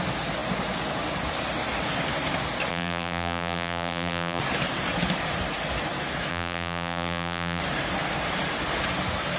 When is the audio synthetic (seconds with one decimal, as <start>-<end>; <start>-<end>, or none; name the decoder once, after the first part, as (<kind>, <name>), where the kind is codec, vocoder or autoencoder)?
2.7-4.4 (vocoder, BigVGAN v2); 6.3-7.6